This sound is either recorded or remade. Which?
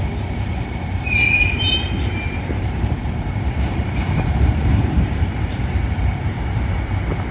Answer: remade